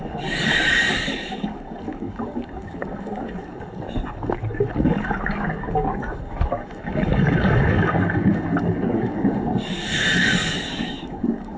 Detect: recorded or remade remade